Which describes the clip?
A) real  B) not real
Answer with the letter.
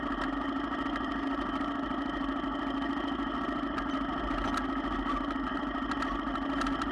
A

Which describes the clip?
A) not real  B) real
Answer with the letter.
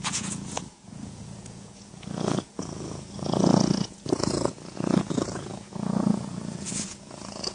A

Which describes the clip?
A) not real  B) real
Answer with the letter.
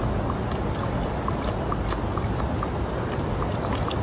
B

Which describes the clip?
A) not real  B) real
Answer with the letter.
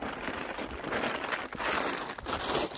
B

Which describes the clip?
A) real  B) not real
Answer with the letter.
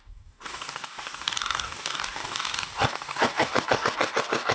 B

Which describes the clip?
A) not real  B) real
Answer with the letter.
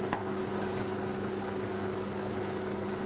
A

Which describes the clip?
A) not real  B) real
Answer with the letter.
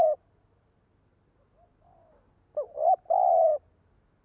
B